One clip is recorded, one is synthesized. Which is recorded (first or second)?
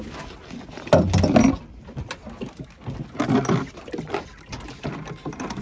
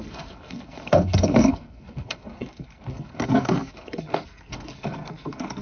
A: first